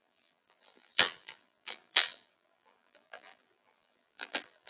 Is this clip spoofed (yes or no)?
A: yes